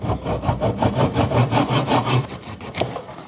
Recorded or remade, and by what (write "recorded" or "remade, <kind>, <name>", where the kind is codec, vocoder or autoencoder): remade, vocoder, BigVGAN v2